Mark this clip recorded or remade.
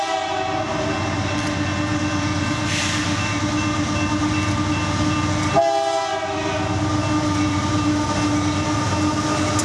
recorded